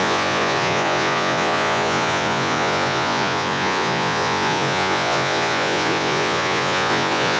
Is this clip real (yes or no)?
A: no